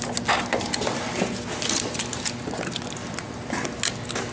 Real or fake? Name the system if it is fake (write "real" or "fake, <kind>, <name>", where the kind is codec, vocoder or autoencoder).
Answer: real